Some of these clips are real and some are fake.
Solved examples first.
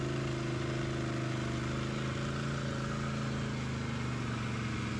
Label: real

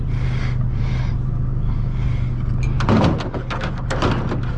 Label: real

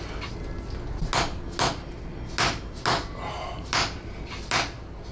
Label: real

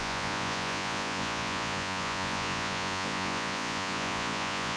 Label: fake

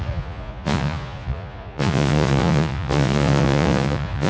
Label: fake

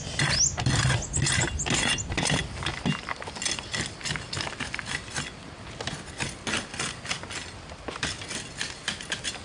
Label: real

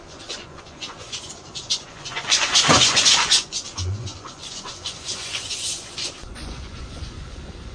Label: fake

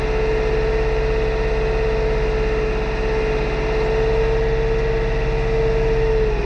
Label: real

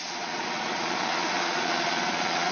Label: fake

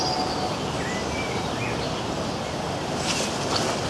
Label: real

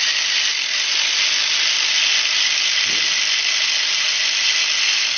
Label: real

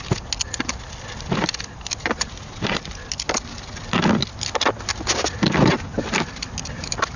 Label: real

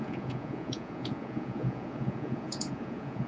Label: fake